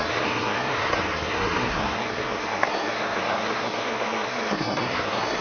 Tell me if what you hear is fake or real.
fake